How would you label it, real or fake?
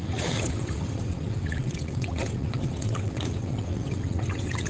fake